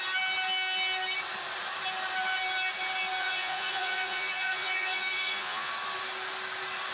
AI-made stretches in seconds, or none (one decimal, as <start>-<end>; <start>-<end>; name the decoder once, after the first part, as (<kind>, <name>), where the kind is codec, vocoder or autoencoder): 3.2-5.7 (vocoder, Vocos)